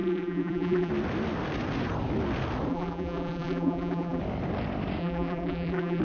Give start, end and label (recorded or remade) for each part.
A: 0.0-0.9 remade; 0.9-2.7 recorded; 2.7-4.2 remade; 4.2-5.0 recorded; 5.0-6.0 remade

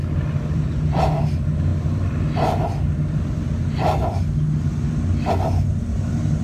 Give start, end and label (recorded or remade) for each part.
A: 0.0-0.5 recorded; 0.5-1.7 remade; 1.7-5.3 recorded; 5.3-6.4 remade

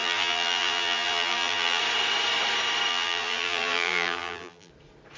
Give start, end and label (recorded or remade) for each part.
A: 0.0-1.8 remade; 1.8-2.9 recorded; 2.9-4.7 remade; 4.7-5.2 recorded